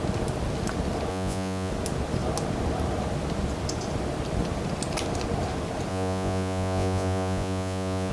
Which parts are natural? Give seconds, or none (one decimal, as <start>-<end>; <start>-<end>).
0.0-1.1; 1.7-5.9

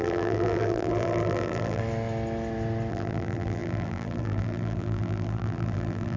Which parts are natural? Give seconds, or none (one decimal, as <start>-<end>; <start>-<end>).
1.8-2.9

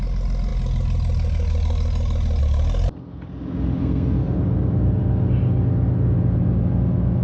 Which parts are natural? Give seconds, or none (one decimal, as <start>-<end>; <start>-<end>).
0.0-3.8; 4.4-7.2

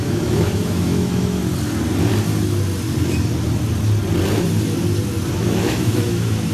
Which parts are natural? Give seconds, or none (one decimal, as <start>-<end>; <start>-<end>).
1.4-5.3

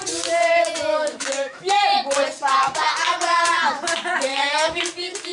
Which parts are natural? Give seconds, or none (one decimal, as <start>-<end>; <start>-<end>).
0.0-0.9; 1.7-4.3; 4.8-5.3